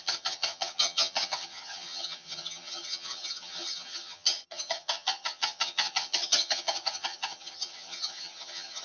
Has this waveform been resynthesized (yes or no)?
yes